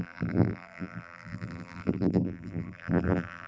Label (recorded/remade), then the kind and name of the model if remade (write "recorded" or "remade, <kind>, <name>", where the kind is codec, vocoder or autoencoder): remade, vocoder, BigVGAN v2